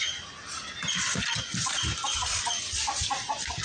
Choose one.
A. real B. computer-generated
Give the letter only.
A